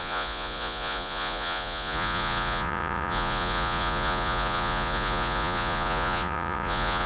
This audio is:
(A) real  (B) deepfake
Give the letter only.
B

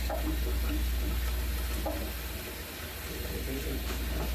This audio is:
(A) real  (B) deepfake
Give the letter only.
A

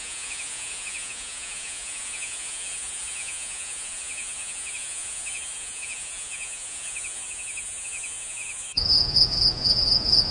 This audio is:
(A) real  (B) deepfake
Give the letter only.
B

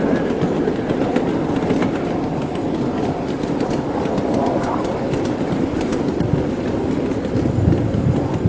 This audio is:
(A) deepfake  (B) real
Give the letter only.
B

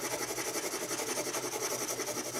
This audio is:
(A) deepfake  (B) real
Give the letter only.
B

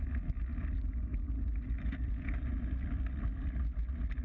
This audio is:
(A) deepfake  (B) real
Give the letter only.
B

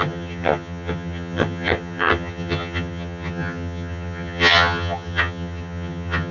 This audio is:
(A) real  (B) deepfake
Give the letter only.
B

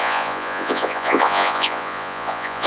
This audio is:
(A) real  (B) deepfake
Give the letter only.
B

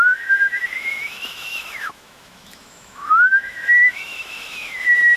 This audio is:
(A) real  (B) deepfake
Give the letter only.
B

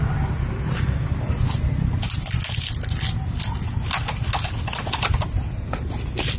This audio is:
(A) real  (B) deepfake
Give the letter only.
A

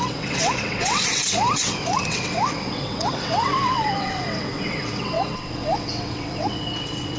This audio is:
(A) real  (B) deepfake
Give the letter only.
B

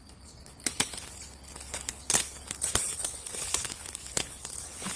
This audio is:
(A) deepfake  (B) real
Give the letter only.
A